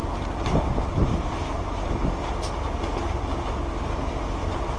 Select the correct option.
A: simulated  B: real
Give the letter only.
B